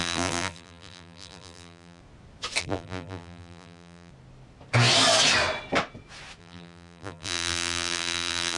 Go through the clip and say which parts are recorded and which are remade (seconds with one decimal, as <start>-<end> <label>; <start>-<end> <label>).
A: 0.0-2.0 remade; 2.0-2.6 recorded; 2.6-4.1 remade; 4.1-6.4 recorded; 6.4-8.6 remade